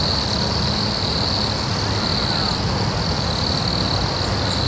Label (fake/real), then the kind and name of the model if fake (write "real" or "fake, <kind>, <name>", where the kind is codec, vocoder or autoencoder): real